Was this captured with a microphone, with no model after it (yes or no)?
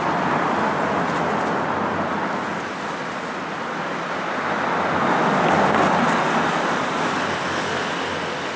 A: yes